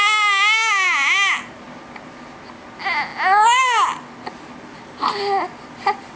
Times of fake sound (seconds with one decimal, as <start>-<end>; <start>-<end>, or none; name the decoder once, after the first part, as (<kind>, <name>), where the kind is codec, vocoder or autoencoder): none